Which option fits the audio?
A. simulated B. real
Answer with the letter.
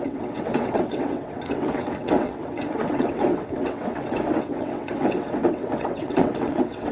A